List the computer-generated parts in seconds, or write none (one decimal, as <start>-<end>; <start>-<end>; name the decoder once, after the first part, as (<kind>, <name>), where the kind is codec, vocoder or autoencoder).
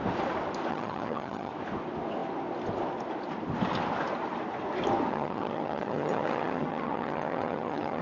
0.7-1.5 (vocoder, HiFi-GAN); 5.1-8.0